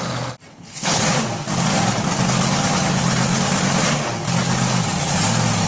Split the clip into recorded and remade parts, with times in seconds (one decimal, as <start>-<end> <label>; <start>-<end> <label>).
0.0-0.5 recorded; 0.5-1.0 remade; 1.0-5.7 recorded